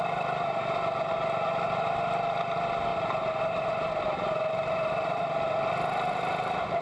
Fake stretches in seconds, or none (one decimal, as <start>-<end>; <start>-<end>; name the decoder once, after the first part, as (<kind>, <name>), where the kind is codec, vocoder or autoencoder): 2.9-6.8 (vocoder, BigVGAN v2)